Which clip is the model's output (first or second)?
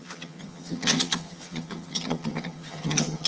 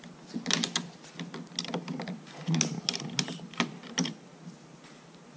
first